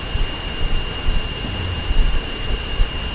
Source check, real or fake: fake